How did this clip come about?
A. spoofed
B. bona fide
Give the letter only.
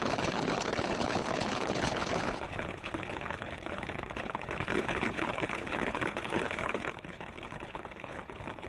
A